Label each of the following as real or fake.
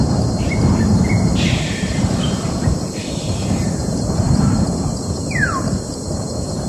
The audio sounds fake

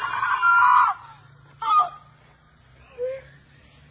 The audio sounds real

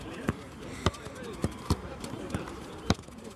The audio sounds fake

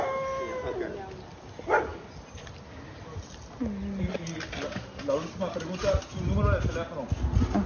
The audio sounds real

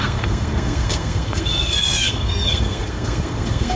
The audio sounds fake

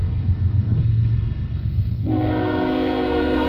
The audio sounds fake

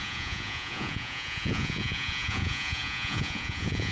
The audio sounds fake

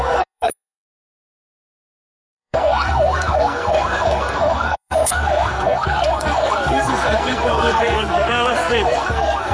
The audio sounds fake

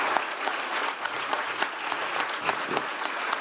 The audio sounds fake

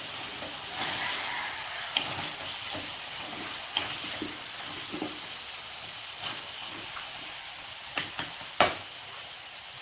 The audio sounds fake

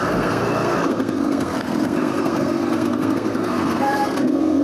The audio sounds fake